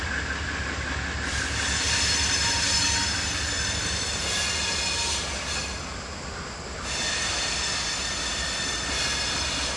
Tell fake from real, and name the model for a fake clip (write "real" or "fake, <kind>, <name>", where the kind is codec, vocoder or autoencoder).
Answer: real